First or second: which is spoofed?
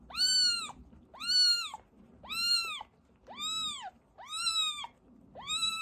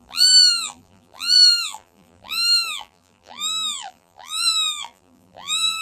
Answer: second